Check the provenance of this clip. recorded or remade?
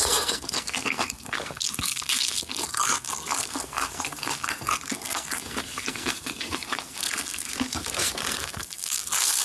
remade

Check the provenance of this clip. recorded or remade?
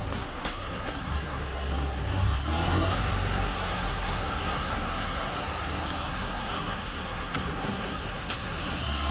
remade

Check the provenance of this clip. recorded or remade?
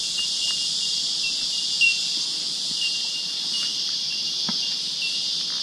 recorded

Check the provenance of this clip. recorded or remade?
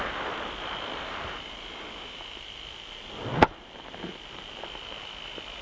recorded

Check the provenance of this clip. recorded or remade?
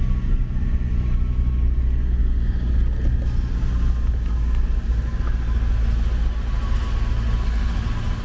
recorded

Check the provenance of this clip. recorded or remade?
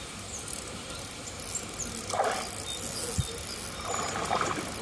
recorded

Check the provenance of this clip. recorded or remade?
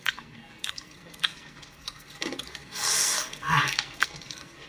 remade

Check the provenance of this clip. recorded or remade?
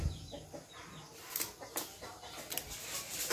recorded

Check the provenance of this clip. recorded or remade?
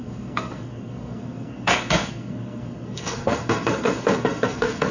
remade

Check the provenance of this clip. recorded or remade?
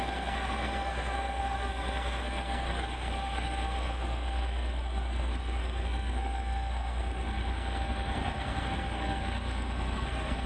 remade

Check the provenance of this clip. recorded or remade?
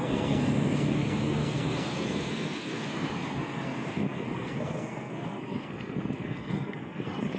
remade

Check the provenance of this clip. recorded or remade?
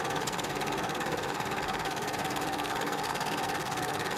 remade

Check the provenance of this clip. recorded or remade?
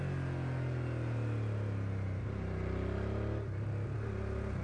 recorded